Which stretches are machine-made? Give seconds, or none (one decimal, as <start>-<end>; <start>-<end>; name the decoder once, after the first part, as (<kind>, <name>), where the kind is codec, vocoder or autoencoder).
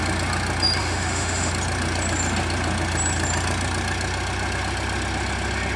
0.8-1.5 (autoencoder, DAC-VAE)